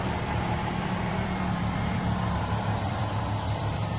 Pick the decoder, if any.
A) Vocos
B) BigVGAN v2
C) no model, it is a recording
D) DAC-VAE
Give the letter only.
B